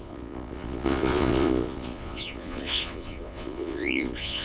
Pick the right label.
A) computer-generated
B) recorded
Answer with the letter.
A